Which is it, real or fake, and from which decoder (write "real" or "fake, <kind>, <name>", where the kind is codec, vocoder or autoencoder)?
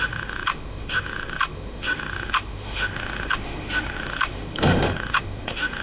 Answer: fake, autoencoder, DAC-VAE